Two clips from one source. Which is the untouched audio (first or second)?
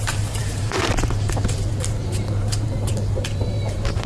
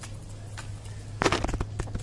second